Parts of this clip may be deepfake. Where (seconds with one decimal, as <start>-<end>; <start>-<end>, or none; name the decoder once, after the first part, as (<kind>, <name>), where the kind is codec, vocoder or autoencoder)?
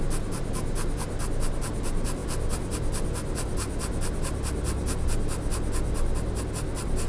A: none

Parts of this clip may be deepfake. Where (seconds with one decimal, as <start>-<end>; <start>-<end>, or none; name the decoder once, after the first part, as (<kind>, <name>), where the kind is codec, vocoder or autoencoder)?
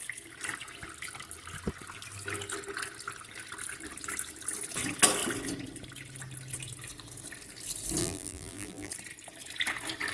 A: 8.0-8.9 (vocoder, BigVGAN v2)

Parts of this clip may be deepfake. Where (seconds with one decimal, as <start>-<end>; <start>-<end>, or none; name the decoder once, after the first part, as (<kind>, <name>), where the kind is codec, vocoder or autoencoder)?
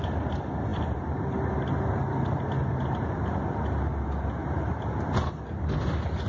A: 0.7-1.5 (vocoder, BigVGAN v2); 4.4-4.9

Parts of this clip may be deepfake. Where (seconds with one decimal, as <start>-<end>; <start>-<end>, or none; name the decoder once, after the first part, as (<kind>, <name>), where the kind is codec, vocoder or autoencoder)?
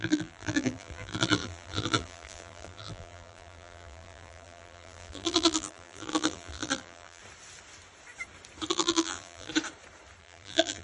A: 0.0-7.2 (vocoder, BigVGAN v2); 8.7-9.5; 10.2-10.8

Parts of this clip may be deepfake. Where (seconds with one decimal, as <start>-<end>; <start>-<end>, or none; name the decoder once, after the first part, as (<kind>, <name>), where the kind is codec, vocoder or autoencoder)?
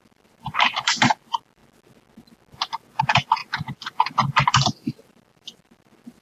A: 0.0-1.6 (vocoder, BigVGAN v2); 3.0-6.2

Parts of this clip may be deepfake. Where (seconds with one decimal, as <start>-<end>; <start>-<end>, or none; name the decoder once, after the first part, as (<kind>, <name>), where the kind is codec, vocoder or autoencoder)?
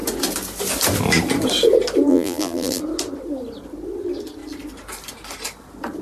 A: 2.1-2.8 (vocoder, BigVGAN v2)